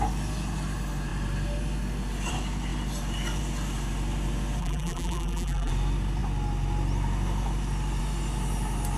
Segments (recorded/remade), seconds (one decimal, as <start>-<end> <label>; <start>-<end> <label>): 0.0-4.6 recorded; 4.6-5.7 remade; 5.7-9.0 recorded